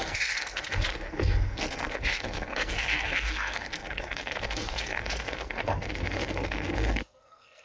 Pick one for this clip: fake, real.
fake